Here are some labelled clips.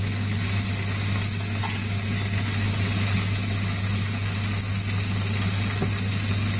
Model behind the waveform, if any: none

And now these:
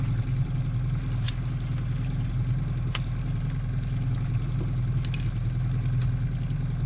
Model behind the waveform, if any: none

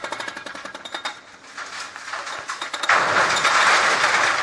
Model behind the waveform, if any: none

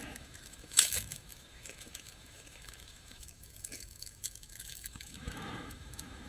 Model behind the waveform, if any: autoencoder, DAC-VAE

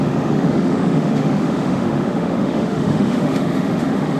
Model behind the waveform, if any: autoencoder, DAC-VAE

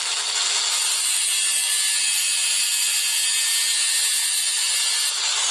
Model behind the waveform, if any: none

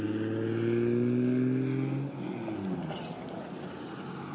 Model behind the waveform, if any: none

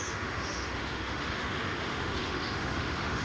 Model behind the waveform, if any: autoencoder, DAC-VAE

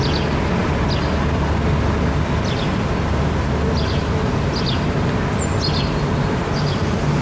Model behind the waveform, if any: none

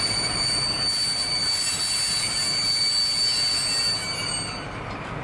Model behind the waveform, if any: none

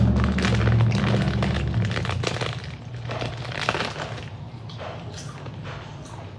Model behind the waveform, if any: none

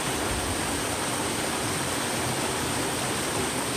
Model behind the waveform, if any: none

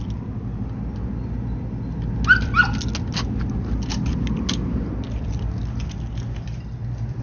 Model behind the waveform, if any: none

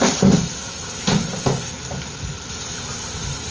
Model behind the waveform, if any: none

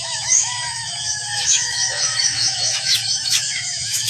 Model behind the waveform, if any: autoencoder, DAC-VAE